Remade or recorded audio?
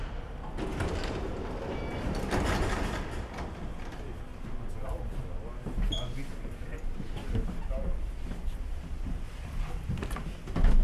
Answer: recorded